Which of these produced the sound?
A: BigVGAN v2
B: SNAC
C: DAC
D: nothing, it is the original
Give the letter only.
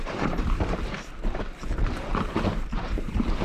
A